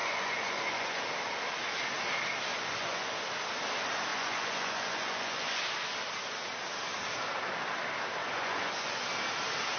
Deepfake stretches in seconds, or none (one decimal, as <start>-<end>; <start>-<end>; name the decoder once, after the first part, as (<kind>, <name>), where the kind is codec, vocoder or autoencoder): 0.0-1.0 (vocoder, Vocos); 2.5-3.1; 4.1-5.6; 8.2-9.0

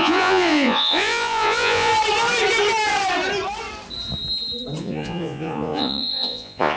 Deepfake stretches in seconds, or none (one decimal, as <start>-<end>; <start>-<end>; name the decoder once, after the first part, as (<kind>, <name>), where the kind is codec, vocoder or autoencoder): 0.0-1.9 (vocoder, Vocos); 4.8-6.8

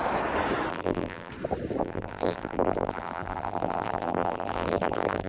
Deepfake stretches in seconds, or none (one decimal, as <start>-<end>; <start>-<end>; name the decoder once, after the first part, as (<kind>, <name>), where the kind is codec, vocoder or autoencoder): 0.7-1.3 (vocoder, BigVGAN v2); 1.8-5.3

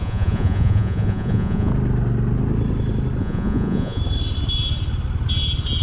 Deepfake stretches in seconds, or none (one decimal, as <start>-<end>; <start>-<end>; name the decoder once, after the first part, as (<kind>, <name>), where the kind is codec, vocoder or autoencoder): 0.0-1.7 (vocoder, Vocos); 3.2-4.0

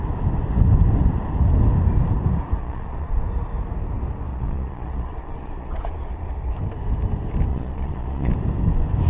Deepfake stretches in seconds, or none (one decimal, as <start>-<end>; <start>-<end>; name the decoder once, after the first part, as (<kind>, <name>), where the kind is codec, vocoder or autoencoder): 2.6-3.2 (vocoder, Vocos); 4.3-6.1; 7.5-8.3

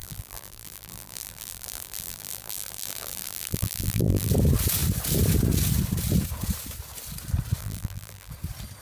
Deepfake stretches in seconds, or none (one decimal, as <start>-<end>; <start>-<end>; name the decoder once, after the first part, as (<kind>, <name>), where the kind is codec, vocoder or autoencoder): 0.0-4.3 (vocoder, BigVGAN v2); 7.6-8.3

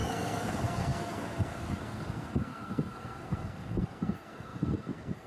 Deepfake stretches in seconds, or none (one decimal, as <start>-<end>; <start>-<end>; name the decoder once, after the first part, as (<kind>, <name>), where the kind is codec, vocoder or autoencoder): 0.0-5.3 (codec, SNAC)

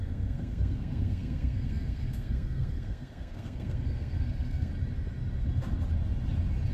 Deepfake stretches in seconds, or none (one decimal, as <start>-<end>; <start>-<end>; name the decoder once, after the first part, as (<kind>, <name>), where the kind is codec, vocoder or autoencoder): 0.0-4.7 (codec, SNAC)